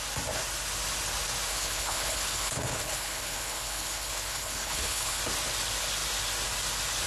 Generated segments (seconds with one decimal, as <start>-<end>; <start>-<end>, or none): 1.5-5.2